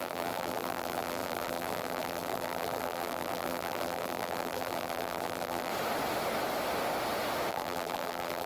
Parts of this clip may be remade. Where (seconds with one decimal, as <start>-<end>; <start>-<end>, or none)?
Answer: 0.0-5.7; 7.5-8.5

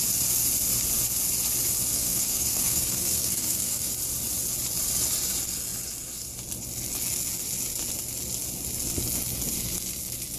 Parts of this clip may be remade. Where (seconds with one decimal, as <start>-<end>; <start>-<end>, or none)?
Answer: 1.9-3.9

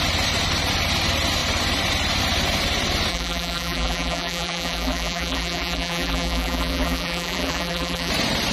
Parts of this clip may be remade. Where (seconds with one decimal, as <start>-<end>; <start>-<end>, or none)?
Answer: 3.1-8.1

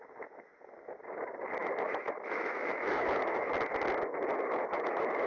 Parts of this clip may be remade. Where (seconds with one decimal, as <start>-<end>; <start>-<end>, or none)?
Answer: 1.6-3.5; 4.3-5.3

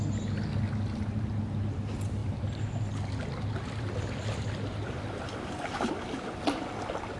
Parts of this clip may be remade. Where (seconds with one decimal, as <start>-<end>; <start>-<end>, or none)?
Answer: none

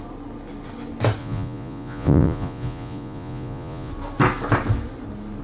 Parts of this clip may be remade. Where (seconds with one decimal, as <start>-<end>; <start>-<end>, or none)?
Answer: 1.2-3.9

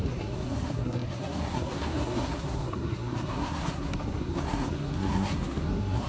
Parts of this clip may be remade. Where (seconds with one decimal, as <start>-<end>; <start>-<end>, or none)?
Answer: 0.0-6.1

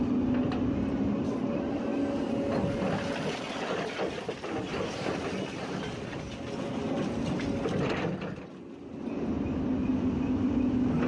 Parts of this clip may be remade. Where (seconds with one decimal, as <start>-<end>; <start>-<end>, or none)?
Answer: none